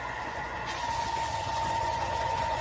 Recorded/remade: remade